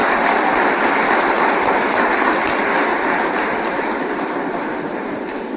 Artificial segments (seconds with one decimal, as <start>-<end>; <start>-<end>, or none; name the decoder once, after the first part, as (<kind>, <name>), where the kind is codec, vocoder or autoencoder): none